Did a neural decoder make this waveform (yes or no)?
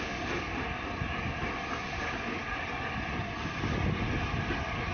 no